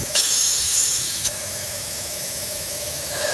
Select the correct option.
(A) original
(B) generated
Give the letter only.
B